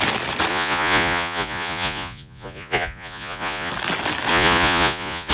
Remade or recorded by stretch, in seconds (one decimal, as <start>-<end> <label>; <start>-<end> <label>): 0.0-0.5 recorded; 0.5-3.7 remade; 3.7-4.3 recorded; 4.3-5.3 remade